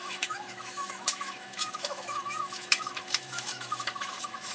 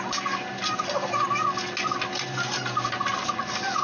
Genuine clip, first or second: second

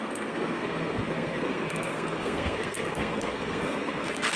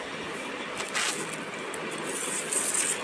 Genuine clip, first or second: second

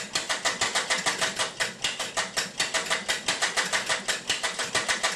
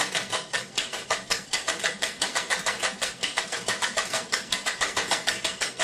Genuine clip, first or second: first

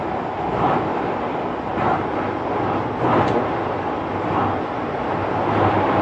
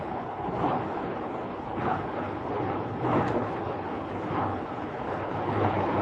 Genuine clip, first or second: first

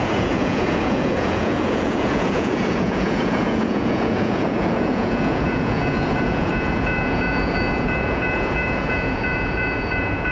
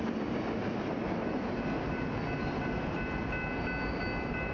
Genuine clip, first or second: second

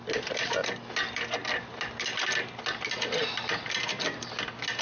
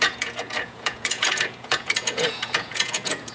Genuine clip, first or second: first